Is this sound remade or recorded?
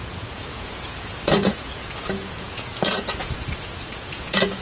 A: remade